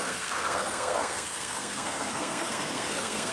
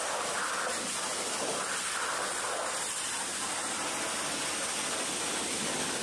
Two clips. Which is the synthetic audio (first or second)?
first